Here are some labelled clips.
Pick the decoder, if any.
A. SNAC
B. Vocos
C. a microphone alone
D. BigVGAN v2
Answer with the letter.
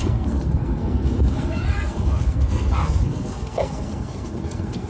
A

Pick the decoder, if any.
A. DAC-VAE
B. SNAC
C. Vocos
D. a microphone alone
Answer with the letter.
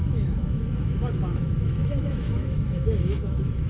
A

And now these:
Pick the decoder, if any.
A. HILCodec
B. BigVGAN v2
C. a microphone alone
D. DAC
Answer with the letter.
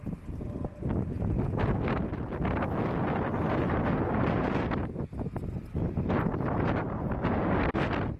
C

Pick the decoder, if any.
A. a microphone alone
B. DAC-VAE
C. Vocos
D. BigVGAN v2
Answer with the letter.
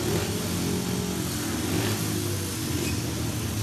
A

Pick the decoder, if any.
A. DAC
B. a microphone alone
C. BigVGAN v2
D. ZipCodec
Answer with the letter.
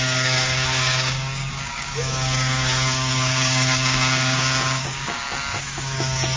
A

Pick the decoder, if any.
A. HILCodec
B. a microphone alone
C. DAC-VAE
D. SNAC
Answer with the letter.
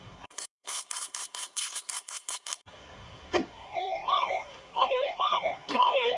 D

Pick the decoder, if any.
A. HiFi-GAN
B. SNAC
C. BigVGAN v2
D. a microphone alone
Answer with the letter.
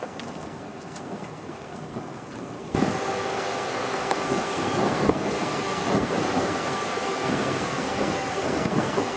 B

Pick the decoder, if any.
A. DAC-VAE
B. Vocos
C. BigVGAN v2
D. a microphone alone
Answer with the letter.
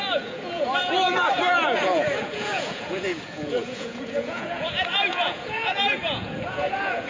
B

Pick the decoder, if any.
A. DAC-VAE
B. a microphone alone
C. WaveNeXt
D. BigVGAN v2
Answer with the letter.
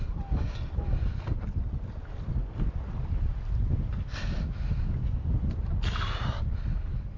B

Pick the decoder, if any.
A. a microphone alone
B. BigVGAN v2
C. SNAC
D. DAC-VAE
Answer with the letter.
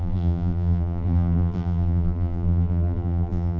B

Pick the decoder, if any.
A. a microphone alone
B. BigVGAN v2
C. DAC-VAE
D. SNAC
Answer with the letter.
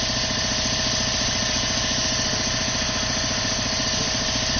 B